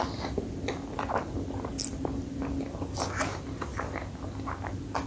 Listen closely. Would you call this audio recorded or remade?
recorded